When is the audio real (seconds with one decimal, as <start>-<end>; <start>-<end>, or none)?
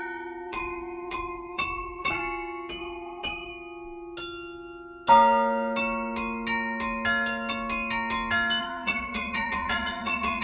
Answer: 2.2-2.8; 3.5-8.6